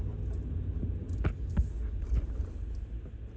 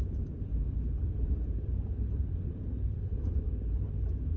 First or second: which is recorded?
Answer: first